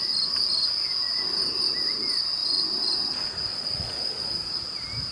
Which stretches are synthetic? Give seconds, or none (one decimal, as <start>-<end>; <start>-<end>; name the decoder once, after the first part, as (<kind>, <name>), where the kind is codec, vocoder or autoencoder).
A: 3.5-4.5 (vocoder, Vocos)

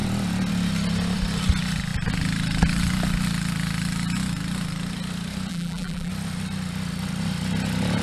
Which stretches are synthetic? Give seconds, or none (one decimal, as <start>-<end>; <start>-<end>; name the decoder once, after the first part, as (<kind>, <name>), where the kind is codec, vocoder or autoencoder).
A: 5.5-6.1 (vocoder, BigVGAN v2)

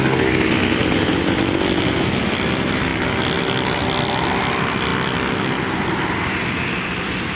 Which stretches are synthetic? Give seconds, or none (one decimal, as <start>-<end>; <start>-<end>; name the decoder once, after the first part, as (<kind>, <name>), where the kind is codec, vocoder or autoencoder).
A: 0.8-1.4 (vocoder, BigVGAN v2)

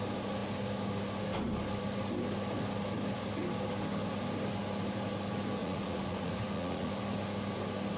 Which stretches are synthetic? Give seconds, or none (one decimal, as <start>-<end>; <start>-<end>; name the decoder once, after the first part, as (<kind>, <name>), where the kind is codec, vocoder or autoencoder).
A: 5.6-6.9 (vocoder, Vocos)

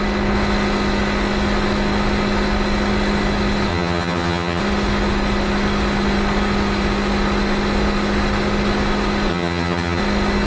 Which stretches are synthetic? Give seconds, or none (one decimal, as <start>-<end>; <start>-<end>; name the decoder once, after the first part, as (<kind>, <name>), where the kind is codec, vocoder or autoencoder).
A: 3.7-4.6 (vocoder, HiFi-GAN); 9.3-10.0